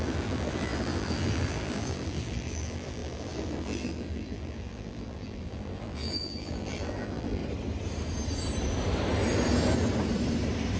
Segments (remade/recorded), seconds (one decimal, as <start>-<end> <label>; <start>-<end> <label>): 0.0-7.4 remade; 7.4-10.8 recorded